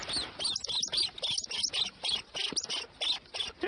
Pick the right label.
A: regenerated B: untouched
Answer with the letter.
B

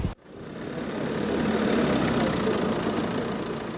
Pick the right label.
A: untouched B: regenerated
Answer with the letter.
A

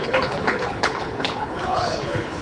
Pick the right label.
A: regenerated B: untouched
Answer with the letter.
A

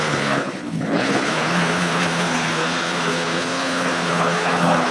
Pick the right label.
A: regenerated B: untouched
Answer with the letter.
A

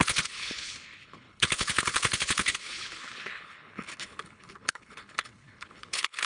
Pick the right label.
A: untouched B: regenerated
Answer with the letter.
B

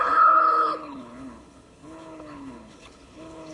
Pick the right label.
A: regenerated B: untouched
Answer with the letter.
A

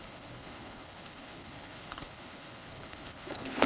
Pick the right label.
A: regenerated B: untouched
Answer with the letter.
A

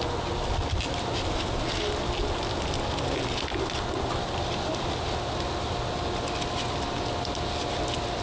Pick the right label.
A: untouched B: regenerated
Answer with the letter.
A